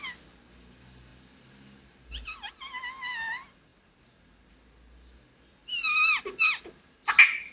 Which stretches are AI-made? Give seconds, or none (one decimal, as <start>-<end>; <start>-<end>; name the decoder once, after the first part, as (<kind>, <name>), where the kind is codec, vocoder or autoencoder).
1.1-2.5 (vocoder, BigVGAN v2)